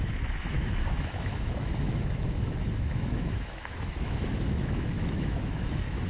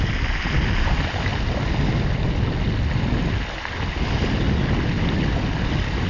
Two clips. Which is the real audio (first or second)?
second